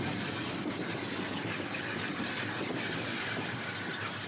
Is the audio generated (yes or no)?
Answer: no